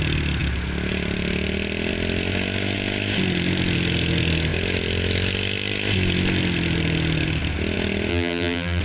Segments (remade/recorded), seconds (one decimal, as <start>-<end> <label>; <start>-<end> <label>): 0.0-8.1 recorded; 8.1-8.8 remade